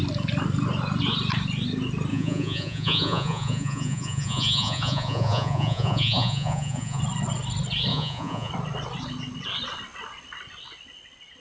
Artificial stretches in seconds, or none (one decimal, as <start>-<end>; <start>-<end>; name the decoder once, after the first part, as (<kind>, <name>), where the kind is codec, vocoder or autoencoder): 2.1-7.0 (vocoder, Vocos); 7.9-8.5